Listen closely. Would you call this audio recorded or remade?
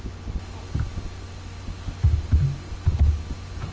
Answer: recorded